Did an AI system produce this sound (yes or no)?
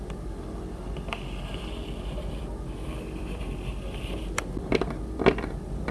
no